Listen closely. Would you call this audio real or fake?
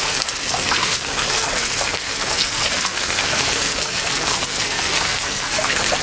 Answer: fake